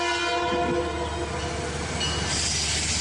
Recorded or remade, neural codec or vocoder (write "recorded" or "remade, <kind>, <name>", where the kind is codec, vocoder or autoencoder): recorded